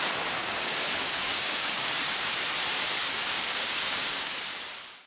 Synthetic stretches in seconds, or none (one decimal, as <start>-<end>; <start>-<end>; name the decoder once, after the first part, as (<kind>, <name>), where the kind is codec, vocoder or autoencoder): 0.4-2.3 (codec, DAC); 3.0-4.3